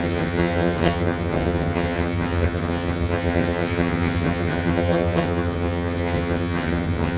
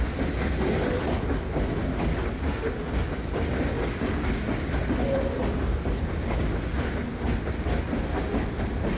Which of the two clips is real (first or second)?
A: second